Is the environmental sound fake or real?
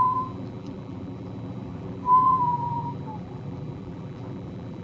fake